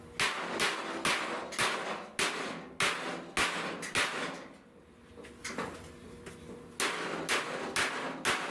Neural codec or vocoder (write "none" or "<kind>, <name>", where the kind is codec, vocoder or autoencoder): none